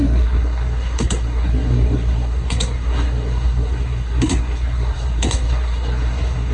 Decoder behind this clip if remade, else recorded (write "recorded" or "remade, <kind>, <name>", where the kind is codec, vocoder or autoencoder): remade, codec, SNAC